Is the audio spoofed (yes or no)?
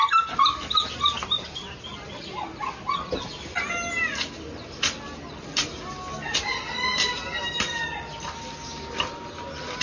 no